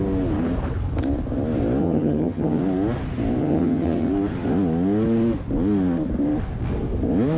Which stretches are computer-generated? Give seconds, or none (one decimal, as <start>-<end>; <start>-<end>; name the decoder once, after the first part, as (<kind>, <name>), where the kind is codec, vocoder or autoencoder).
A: 1.8-2.6 (vocoder, HiFi-GAN); 3.4-4.1